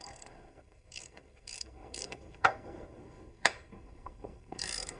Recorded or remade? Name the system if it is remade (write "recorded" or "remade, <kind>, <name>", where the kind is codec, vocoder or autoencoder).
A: remade, codec, SNAC